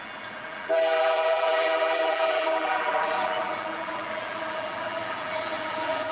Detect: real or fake fake